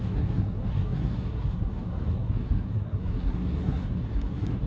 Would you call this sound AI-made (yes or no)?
yes